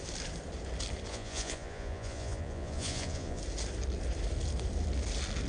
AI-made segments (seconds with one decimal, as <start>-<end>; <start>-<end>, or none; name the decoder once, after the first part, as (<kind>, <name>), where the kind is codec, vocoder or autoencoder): 1.1-3.4 (vocoder, Vocos)